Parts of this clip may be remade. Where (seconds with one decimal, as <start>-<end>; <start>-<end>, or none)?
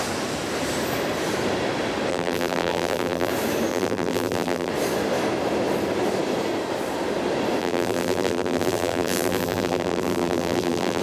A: 2.1-3.3; 3.7-4.7; 7.6-11.0